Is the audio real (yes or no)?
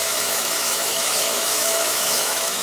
no